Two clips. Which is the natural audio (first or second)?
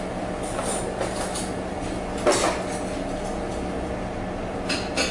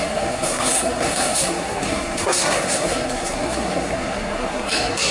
first